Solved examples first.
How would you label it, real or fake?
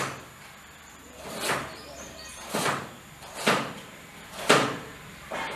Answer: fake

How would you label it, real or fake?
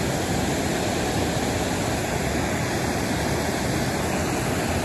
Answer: real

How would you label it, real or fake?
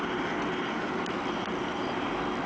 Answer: real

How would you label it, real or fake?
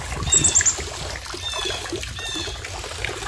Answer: real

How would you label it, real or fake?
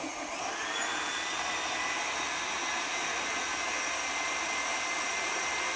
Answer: real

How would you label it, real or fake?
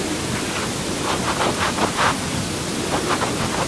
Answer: real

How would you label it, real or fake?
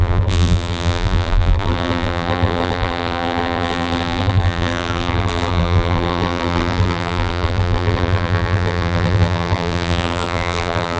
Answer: fake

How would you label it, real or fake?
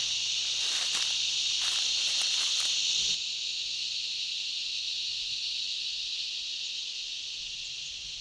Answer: real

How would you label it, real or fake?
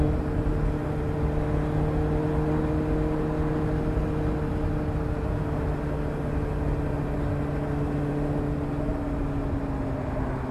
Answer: real